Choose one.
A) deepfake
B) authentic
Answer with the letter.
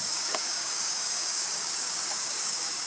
A